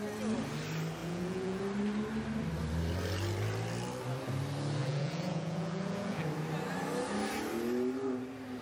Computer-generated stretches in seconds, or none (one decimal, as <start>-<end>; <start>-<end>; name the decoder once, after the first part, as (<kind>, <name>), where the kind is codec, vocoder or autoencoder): 1.0-1.6 (vocoder, Vocos); 4.8-6.2